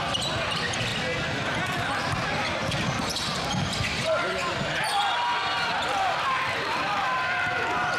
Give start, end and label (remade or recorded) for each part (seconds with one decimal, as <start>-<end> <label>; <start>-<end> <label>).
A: 0.0-2.6 recorded; 2.6-5.0 remade; 5.0-5.4 recorded; 5.4-8.0 remade